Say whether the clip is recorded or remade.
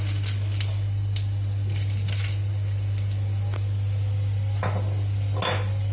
recorded